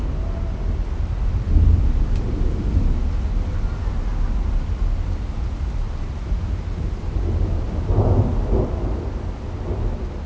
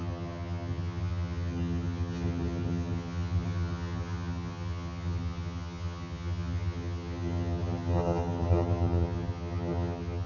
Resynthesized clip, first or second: second